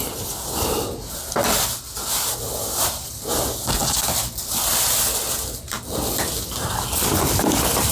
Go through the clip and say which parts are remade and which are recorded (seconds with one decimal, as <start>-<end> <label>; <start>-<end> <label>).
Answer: 0.0-7.9 recorded